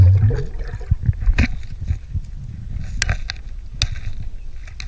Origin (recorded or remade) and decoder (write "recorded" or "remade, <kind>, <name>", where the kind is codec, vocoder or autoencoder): recorded